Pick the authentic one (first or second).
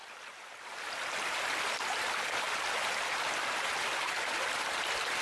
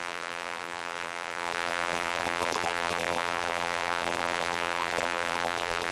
first